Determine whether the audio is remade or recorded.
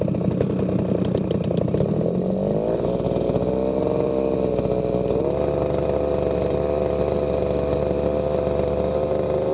recorded